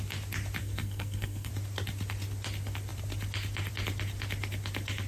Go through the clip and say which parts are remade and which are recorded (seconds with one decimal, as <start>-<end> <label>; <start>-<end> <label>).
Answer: 0.0-0.6 recorded; 0.6-1.5 remade; 1.5-5.1 recorded